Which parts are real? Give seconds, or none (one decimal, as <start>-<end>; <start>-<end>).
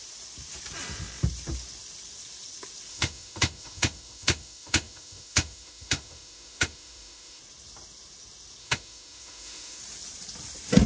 0.0-2.9; 7.4-8.6; 9.8-10.9